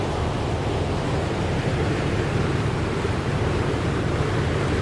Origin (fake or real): fake